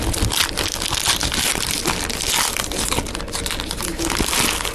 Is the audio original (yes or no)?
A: yes